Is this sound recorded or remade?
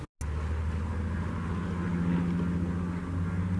recorded